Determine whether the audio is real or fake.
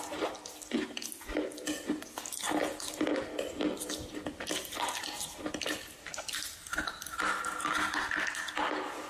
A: real